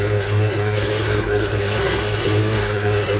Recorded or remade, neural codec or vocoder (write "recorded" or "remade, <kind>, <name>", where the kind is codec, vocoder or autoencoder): remade, codec, SNAC